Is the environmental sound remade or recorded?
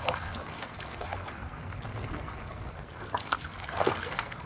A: remade